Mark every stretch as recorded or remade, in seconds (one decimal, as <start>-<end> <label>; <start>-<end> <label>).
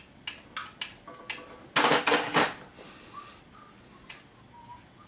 0.0-5.1 recorded